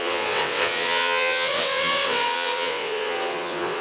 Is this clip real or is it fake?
fake